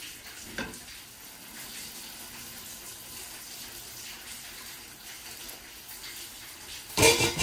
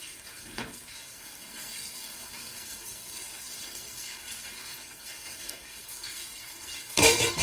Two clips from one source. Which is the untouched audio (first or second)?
first